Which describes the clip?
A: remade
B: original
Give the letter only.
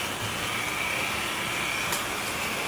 B